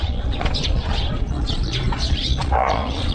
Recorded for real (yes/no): no